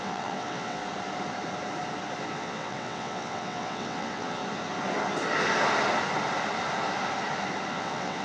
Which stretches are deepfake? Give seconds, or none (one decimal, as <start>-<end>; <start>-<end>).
0.0-0.8; 2.3-4.4; 7.7-8.2